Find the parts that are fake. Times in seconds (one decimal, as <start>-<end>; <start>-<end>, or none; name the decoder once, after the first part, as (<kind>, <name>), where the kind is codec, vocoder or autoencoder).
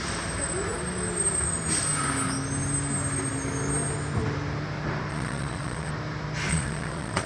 5.1-5.9 (vocoder, Vocos); 6.5-7.3